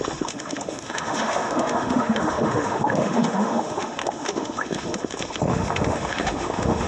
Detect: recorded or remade remade